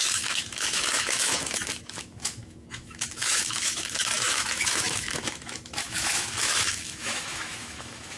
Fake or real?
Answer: fake